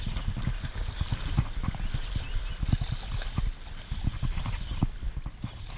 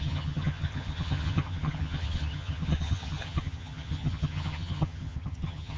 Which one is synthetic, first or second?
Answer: second